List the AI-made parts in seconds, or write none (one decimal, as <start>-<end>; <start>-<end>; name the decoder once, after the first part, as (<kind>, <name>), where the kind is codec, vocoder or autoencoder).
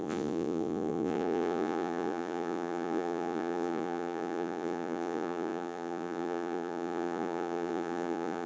0.0-8.5 (vocoder, Vocos)